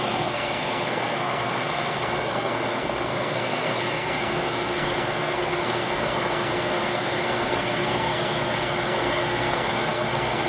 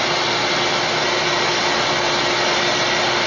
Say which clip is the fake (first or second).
first